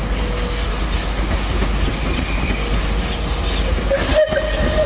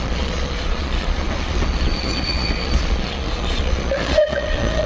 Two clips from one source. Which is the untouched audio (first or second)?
first